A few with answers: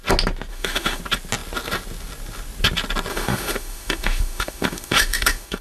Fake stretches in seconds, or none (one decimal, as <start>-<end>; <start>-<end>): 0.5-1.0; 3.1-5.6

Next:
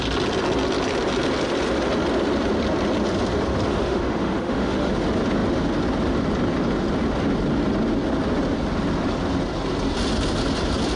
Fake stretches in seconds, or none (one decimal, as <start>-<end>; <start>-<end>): 3.7-4.9

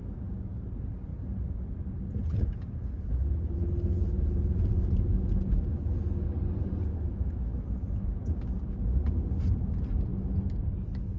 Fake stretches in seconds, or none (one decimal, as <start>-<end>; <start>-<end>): 6.9-8.3